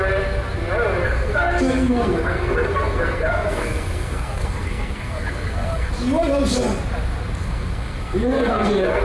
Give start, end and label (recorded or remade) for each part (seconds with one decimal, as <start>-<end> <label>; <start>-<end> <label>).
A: 0.0-1.0 recorded; 1.0-5.9 remade; 5.9-7.4 recorded; 7.4-9.0 remade